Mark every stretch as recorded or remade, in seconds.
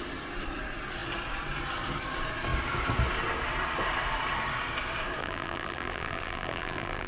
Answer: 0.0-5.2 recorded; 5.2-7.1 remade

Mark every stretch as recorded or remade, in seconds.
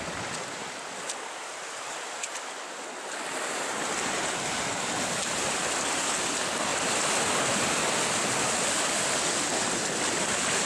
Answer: 0.0-10.7 recorded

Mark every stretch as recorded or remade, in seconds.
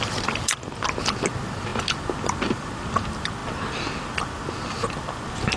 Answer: 0.0-5.6 recorded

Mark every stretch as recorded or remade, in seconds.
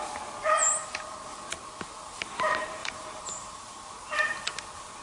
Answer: 0.0-2.8 recorded; 2.8-3.9 remade; 3.9-5.0 recorded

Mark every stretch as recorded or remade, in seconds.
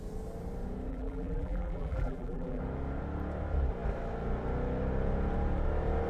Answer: 0.0-0.9 recorded; 0.9-2.6 remade; 2.6-6.1 recorded